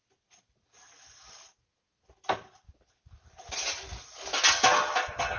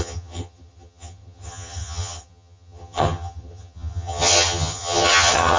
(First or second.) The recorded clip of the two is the first